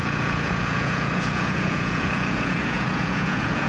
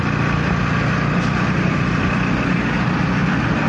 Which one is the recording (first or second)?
second